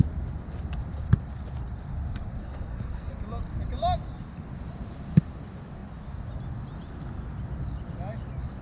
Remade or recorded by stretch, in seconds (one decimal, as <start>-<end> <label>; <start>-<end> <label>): 0.0-2.4 recorded; 2.4-3.1 remade; 3.1-8.6 recorded